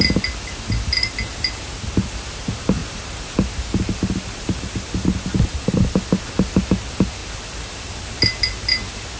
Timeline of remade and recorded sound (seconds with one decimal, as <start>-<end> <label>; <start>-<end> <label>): 0.0-9.2 recorded